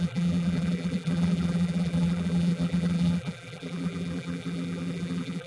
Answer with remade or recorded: remade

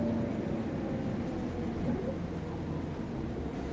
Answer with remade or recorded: recorded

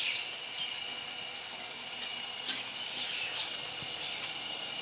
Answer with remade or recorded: recorded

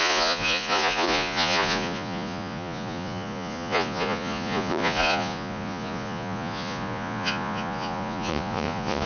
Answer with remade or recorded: remade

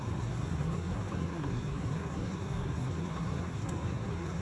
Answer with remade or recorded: remade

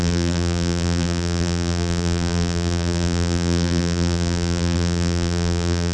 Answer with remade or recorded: remade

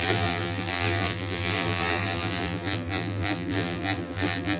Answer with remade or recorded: remade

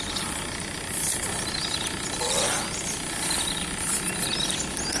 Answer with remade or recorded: recorded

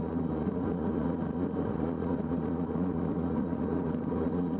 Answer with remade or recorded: remade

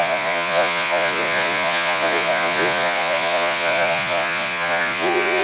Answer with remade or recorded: remade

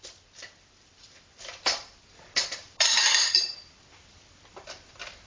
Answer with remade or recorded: remade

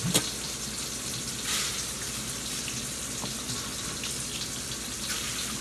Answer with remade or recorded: recorded